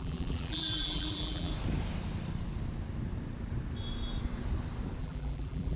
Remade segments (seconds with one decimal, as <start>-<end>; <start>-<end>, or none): 0.0-1.5; 5.0-5.8